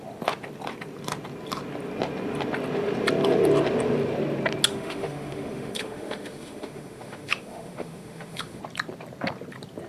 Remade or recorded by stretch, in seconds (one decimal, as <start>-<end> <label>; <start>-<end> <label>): 0.0-4.7 recorded; 4.7-8.6 remade; 8.6-9.9 recorded